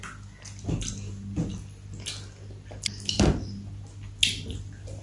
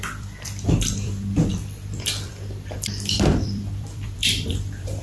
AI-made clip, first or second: second